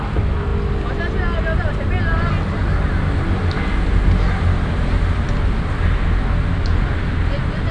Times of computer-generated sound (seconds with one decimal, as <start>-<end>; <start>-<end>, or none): none